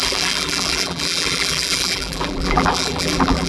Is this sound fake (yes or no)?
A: yes